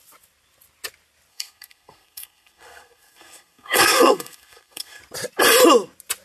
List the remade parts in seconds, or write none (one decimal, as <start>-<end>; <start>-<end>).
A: 1.3-5.0